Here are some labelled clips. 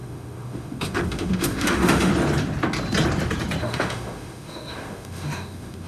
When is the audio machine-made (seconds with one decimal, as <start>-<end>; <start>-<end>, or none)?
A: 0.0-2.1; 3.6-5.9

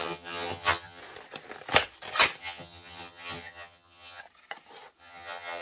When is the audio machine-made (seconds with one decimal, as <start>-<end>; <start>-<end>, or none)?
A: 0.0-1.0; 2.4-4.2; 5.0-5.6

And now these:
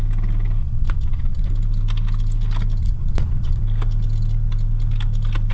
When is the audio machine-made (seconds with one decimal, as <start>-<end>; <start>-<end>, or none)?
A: 0.6-1.5; 2.8-3.6